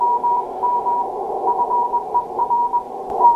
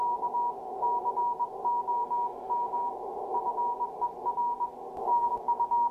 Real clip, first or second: second